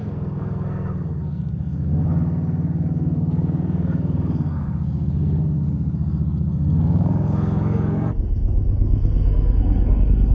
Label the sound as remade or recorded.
remade